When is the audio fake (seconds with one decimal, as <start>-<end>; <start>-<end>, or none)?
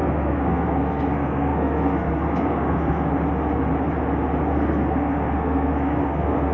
0.0-3.1; 4.5-6.5